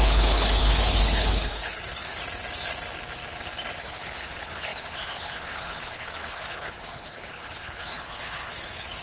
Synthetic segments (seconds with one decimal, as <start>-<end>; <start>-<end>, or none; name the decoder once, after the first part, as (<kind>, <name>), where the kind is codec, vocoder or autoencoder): 0.0-2.2 (codec, HILCodec); 3.8-9.0